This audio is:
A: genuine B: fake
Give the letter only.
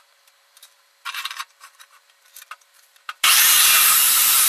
B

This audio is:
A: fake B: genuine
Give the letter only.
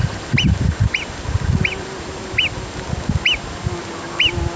B